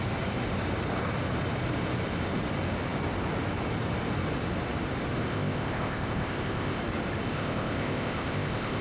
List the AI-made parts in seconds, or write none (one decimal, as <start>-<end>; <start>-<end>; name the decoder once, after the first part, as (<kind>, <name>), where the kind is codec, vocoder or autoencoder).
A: 5.3-6.8 (codec, ZipCodec); 7.3-8.8